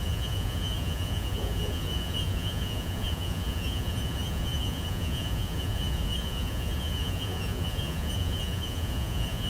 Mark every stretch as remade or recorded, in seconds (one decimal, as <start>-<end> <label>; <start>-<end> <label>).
0.0-9.5 remade